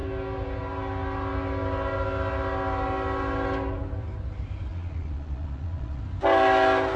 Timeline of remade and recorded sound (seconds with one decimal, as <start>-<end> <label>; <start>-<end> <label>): 0.0-4.7 recorded; 4.7-6.0 remade; 6.0-7.0 recorded